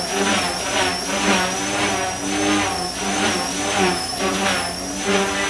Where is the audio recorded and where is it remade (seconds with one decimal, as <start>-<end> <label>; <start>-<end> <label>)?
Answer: 0.0-5.5 recorded